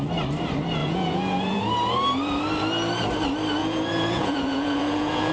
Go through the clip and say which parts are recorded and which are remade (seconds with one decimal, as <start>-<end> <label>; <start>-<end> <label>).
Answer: 0.0-0.8 recorded; 0.8-1.6 remade; 1.6-3.6 recorded; 3.6-5.3 remade